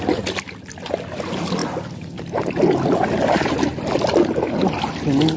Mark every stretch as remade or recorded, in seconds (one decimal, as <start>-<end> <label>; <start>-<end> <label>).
0.0-5.4 recorded